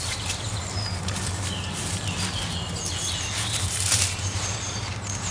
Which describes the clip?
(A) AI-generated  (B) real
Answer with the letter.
A